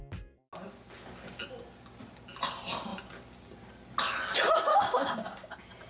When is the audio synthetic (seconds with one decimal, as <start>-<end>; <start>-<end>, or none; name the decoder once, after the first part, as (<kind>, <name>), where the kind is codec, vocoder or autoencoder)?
4.7-5.5 (codec, DAC)